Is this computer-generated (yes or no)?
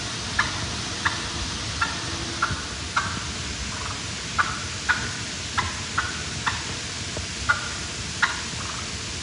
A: no